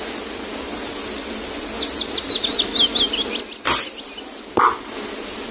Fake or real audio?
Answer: real